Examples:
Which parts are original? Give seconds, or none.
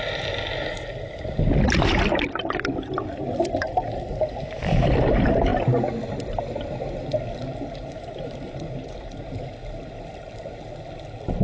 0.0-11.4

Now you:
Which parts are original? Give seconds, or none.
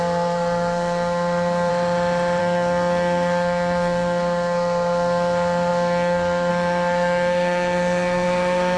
1.7-2.4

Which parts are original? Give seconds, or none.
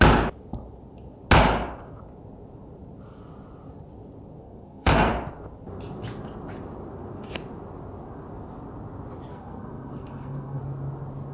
0.0-4.4; 5.1-9.3; 10.6-11.3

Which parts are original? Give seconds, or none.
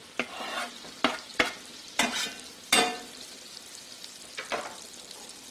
0.0-5.5